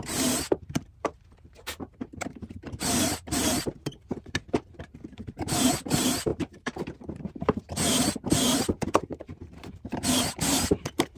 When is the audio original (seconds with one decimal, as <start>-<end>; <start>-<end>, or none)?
none